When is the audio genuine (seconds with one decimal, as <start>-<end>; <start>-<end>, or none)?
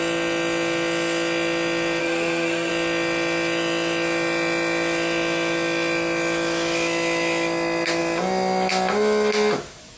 0.0-2.0; 2.7-10.0